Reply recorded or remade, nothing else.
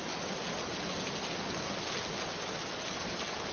recorded